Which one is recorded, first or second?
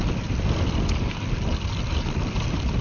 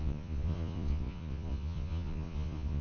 first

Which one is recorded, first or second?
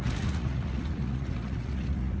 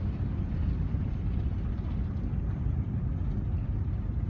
second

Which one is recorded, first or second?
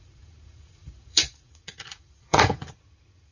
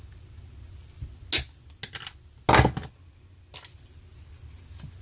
second